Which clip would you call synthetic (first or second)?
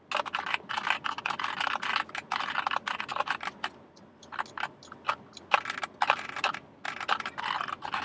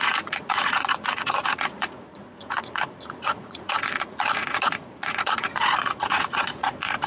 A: second